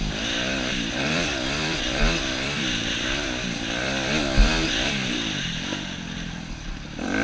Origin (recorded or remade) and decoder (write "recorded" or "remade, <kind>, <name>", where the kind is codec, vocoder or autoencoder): remade, vocoder, BigVGAN v2